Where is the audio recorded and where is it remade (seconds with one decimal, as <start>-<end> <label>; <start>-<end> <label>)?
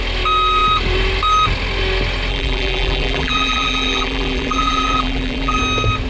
0.0-2.3 recorded; 2.3-5.6 remade; 5.6-6.1 recorded